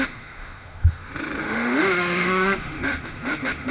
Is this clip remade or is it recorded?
remade